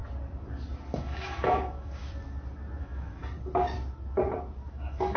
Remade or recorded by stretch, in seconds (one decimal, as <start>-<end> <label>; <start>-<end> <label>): 0.0-1.0 recorded; 1.0-2.0 remade; 2.0-2.8 recorded; 2.8-3.2 remade; 3.2-4.7 recorded; 4.7-5.2 remade